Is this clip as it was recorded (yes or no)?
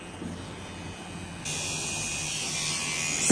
yes